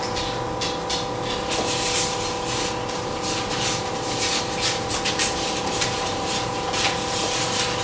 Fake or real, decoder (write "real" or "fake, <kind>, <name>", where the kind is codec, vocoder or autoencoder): real